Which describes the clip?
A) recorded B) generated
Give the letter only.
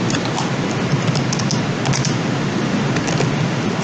A